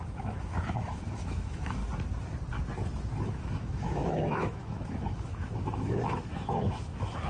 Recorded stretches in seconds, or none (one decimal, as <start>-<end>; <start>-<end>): 1.8-3.2